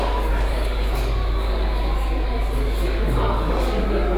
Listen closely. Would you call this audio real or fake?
fake